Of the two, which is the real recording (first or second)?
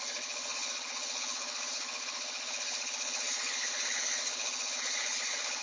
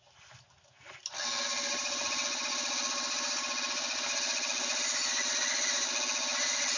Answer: second